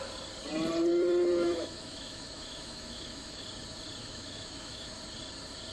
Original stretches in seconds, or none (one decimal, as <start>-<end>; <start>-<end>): 0.0-0.9; 3.4-4.0; 5.0-5.7